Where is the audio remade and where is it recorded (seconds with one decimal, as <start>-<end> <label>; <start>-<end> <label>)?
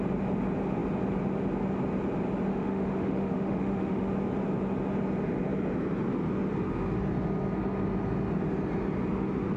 0.0-2.5 recorded; 2.5-4.1 remade; 4.1-9.6 recorded